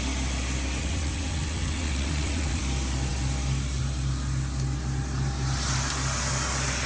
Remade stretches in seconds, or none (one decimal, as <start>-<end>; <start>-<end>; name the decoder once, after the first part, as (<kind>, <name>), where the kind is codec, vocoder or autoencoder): 0.8-2.6 (vocoder, WaveNeXt)